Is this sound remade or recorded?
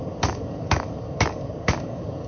remade